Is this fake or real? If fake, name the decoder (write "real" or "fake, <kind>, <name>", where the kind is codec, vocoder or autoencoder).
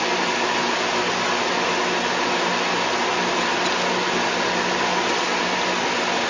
real